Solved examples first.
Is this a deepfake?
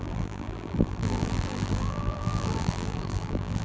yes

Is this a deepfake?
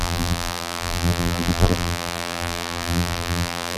yes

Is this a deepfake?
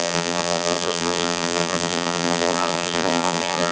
yes